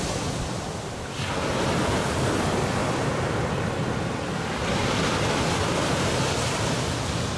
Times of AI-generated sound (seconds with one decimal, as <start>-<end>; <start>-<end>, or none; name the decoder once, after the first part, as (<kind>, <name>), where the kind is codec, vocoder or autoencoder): none